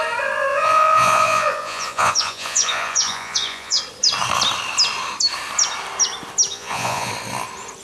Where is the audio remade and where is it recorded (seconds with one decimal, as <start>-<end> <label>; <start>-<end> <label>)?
0.0-0.5 recorded; 0.5-3.8 remade; 3.8-6.5 recorded; 6.5-7.1 remade; 7.1-7.8 recorded